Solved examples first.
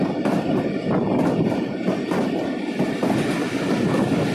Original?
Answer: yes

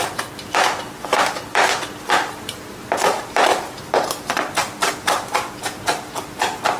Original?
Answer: yes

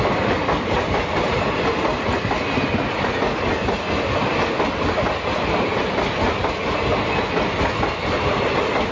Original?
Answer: yes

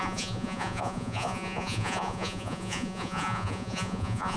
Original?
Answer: no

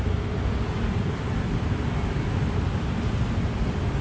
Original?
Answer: yes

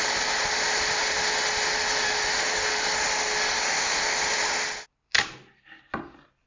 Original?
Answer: yes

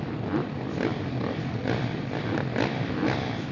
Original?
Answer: no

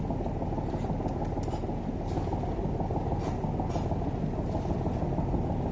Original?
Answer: yes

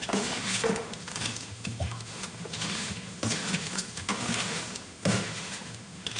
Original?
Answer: no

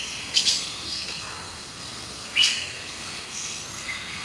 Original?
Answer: no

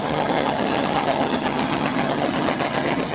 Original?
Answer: no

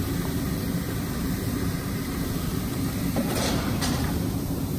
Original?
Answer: no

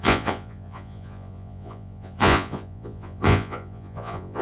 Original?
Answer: no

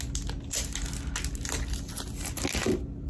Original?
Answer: yes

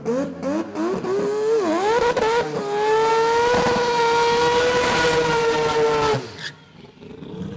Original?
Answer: yes